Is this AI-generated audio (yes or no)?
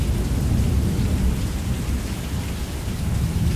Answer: no